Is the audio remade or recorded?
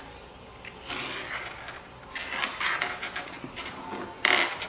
recorded